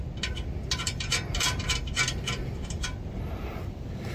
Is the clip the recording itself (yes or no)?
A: yes